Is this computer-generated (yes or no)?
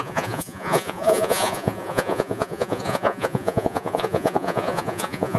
yes